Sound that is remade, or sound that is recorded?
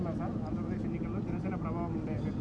recorded